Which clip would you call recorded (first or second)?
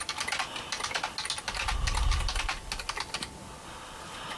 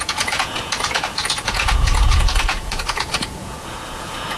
first